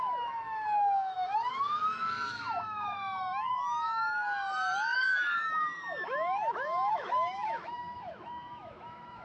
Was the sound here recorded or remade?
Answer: remade